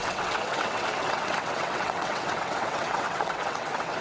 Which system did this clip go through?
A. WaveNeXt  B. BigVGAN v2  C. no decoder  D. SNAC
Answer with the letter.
A